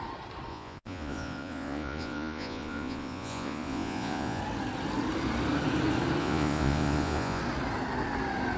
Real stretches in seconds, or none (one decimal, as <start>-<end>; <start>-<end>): 0.0-0.5; 4.4-6.2; 7.4-8.6